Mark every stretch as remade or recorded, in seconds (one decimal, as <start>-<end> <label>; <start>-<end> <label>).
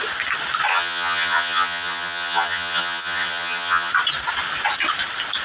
0.0-0.7 recorded; 0.7-3.9 remade; 3.9-5.4 recorded